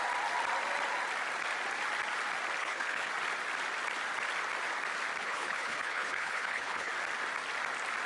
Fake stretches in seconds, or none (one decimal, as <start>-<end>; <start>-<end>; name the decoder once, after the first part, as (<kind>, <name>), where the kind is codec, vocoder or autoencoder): 2.6-3.1 (codec, HILCodec); 5.2-6.9